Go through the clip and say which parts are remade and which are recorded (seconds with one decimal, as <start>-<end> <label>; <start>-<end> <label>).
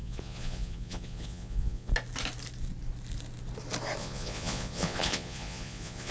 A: 0.0-1.9 remade; 1.9-4.0 recorded; 4.0-6.1 remade